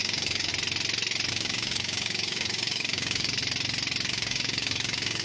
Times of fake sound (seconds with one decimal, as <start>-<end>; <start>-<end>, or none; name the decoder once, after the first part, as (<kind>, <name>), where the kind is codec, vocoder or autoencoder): 0.0-0.5 (codec, DAC); 1.3-3.4; 4.1-5.2